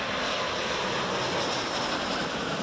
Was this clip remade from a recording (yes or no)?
no